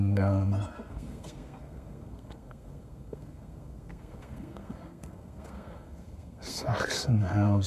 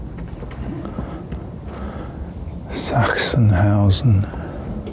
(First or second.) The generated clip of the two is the first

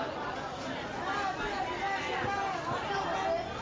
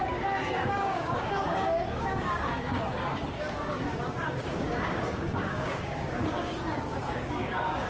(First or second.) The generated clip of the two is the second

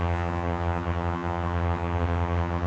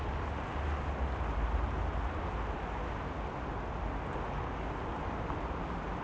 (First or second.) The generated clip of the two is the first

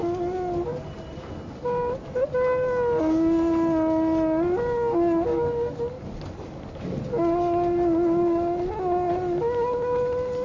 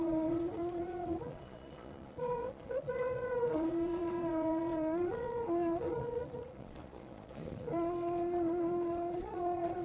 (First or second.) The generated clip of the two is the second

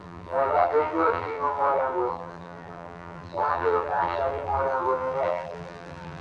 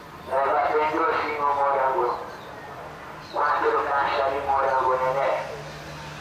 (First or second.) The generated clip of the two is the first